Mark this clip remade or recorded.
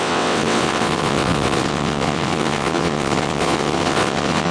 remade